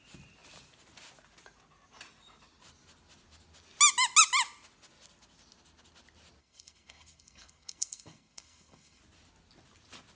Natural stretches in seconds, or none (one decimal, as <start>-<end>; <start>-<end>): 0.0-6.4; 9.0-10.2